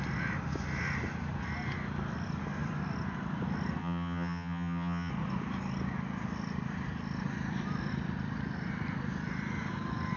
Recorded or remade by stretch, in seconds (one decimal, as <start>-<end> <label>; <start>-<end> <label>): 0.0-3.8 recorded; 3.8-5.1 remade; 5.1-10.2 recorded